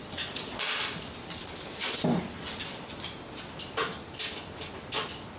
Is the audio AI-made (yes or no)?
no